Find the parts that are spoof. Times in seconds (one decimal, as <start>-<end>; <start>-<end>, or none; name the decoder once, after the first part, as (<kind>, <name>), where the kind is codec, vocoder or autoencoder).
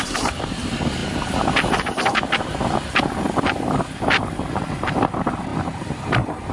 5.5-6.5 (vocoder, BigVGAN v2)